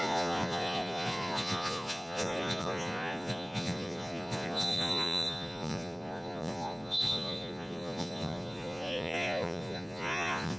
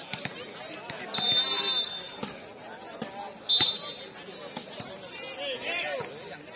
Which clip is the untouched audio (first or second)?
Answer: second